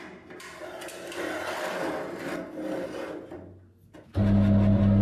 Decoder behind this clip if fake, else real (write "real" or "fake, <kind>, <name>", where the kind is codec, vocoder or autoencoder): real